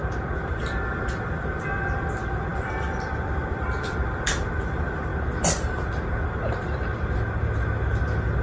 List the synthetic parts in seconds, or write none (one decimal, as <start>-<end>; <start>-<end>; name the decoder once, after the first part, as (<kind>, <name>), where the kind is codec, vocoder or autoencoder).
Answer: 0.0-5.1 (vocoder, BigVGAN v2); 6.5-6.9